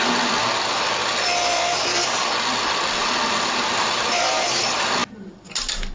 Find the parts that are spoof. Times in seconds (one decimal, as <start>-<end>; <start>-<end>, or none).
none